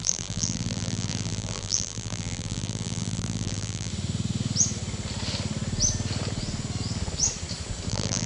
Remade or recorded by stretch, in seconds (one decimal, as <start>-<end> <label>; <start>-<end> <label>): 0.0-3.9 remade; 3.9-7.9 recorded; 7.9-8.3 remade